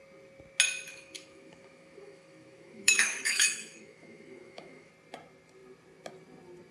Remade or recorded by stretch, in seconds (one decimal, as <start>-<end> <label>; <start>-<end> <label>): 0.0-0.9 recorded; 0.9-4.9 remade; 4.9-6.7 recorded